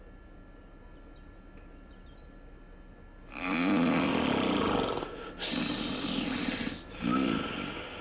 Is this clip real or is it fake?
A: real